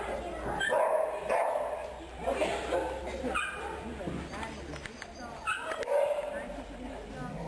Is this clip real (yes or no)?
yes